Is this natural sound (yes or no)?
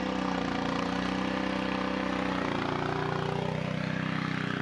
yes